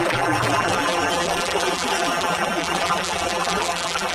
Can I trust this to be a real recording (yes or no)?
no